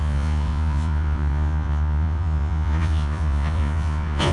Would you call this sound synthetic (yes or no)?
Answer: yes